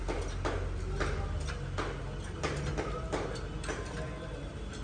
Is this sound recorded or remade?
recorded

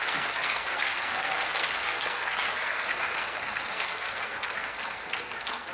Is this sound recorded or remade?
remade